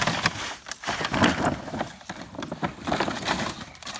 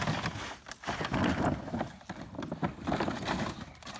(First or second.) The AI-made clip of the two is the first